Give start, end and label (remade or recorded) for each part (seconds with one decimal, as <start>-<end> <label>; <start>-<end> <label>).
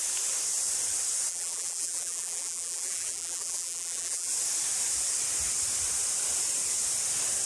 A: 0.0-1.3 recorded; 1.3-4.3 remade; 4.3-7.5 recorded